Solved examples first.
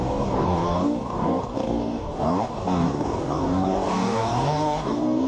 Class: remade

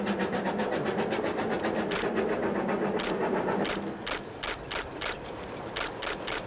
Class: recorded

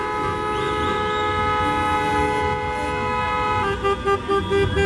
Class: recorded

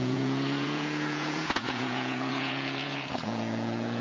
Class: remade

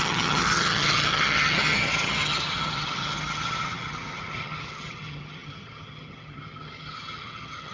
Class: remade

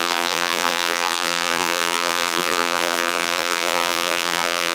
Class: remade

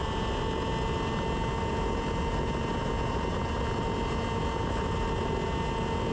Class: recorded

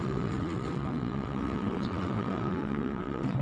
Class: remade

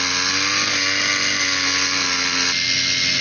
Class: recorded